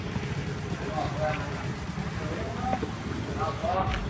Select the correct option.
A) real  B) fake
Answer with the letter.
A